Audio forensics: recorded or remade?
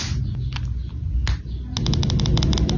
recorded